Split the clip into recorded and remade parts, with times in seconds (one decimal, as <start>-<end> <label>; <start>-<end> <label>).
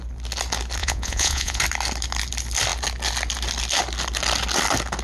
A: 0.0-0.8 recorded; 0.8-1.6 remade; 1.6-5.0 recorded